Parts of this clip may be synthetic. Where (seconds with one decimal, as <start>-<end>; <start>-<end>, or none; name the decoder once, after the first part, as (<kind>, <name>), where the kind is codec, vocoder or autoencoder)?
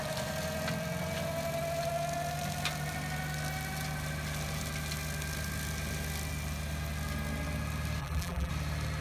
8.0-8.5 (vocoder, BigVGAN v2)